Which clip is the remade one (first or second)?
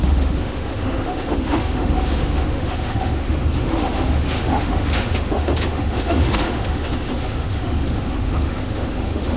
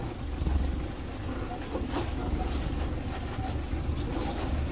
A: first